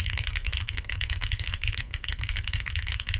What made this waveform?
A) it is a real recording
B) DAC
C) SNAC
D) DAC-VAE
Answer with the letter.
C